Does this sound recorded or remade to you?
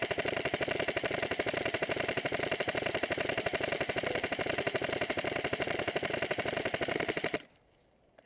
remade